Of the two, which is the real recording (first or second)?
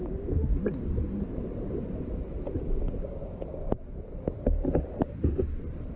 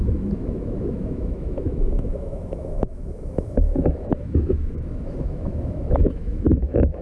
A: first